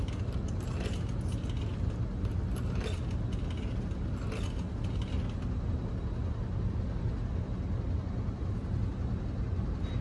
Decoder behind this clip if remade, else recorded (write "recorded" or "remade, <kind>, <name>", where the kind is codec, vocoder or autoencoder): recorded